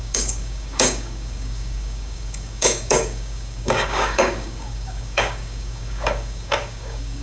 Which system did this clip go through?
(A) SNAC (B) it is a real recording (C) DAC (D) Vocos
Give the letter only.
C